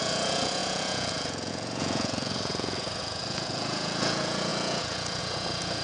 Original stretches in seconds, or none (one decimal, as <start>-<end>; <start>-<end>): none